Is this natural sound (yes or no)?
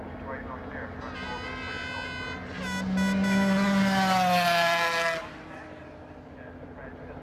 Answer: yes